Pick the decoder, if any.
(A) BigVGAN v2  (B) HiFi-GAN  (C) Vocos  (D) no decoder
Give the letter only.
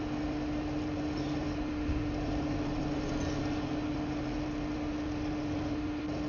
D